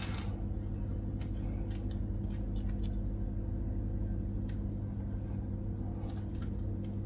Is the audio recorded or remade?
recorded